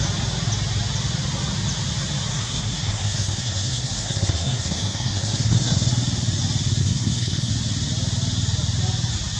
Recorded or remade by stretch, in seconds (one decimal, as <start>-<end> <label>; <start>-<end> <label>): 0.0-2.3 recorded; 2.3-5.9 remade; 5.9-6.8 recorded; 6.8-7.5 remade; 7.5-9.4 recorded